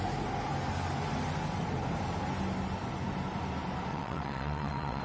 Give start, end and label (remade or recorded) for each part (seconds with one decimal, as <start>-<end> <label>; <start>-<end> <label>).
0.0-3.9 recorded; 3.9-5.0 remade